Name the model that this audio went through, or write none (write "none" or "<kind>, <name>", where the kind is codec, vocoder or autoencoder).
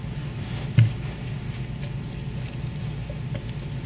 none